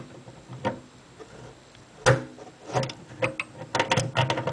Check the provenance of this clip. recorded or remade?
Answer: recorded